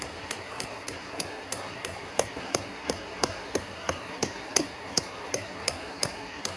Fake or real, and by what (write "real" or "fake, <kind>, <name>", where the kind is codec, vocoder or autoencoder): fake, codec, SNAC